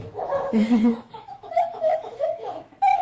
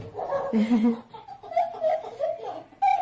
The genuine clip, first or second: second